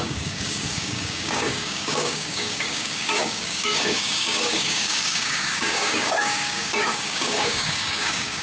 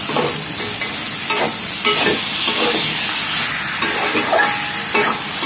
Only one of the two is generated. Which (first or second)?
first